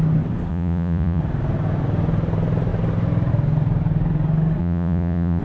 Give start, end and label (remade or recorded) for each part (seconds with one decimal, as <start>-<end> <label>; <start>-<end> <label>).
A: 0.0-0.5 recorded; 0.5-1.2 remade; 1.2-4.6 recorded; 4.6-5.4 remade